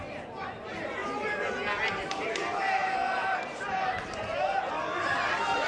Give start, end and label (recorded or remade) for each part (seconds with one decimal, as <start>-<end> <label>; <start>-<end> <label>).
0.0-2.8 recorded; 2.8-4.7 remade; 4.7-5.7 recorded